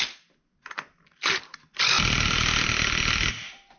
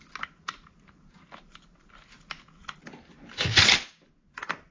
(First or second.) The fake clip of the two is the second